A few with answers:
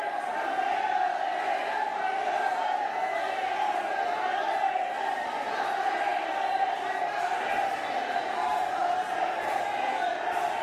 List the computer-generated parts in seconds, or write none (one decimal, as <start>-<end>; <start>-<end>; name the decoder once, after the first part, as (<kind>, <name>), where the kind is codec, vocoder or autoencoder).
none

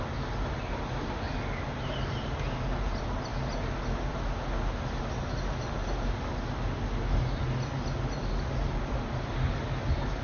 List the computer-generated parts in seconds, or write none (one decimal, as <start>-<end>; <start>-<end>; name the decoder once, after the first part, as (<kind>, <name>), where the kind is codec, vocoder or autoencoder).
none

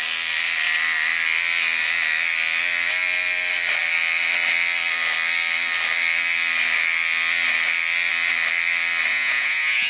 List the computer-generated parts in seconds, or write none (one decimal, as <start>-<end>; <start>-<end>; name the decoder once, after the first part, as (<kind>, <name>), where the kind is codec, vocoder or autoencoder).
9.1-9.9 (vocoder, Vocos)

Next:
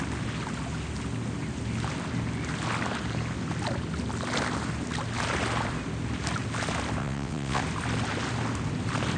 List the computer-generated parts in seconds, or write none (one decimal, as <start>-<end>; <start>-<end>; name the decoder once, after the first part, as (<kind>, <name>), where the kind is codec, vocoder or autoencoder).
7.0-7.6 (vocoder, WaveNeXt)

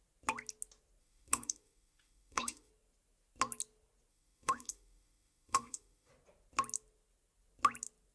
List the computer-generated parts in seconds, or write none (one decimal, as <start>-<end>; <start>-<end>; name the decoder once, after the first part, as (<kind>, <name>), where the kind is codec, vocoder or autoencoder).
1.0-2.7 (autoencoder, DAC-VAE); 4.1-6.1

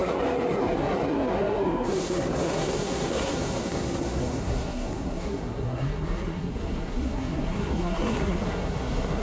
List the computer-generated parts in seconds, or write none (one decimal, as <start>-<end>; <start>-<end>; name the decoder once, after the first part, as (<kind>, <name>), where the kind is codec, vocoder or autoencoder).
0.0-9.2 (codec, SNAC)